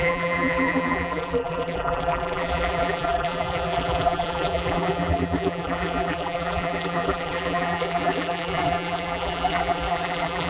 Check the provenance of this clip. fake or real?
fake